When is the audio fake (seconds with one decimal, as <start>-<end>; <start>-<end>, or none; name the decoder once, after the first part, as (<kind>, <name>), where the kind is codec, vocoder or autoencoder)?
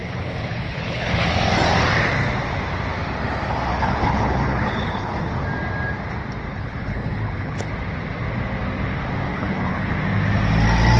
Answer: 0.0-1.3 (codec, HILCodec); 3.7-5.3; 6.5-7.7; 9.3-9.9